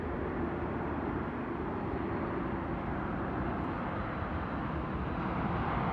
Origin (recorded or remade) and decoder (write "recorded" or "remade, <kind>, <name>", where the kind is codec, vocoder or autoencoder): recorded